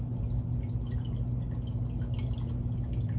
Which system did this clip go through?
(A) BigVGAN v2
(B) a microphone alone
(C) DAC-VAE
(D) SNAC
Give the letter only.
B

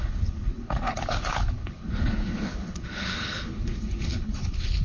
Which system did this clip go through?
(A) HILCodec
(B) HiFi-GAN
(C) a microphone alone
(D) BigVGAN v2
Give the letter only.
A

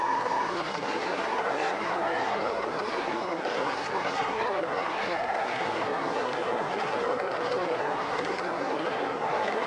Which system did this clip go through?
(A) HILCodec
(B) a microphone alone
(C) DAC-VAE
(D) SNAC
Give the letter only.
D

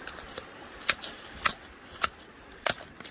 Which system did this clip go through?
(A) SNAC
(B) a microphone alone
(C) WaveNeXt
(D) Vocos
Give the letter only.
B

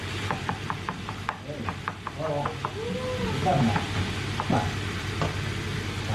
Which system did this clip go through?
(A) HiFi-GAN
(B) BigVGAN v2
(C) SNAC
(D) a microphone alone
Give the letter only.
D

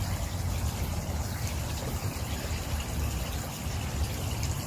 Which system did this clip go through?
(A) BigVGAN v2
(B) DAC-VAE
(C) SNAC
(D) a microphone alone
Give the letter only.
A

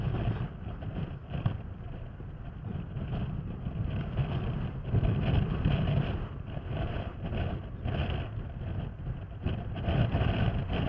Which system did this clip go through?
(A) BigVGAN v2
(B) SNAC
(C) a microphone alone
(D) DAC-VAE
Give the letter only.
C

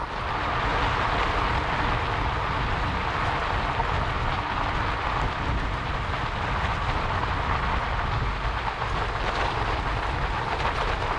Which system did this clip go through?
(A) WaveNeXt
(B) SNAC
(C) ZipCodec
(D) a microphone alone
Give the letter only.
D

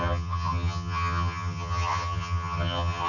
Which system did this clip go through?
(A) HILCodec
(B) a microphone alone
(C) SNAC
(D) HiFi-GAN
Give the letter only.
D